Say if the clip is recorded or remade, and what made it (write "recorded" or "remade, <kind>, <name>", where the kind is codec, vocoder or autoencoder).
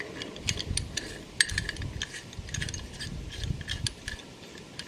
recorded